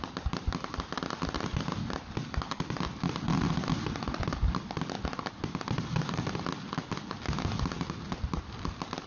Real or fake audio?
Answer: real